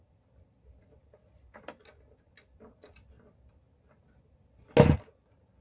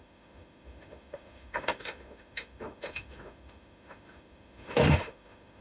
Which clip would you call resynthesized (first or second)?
second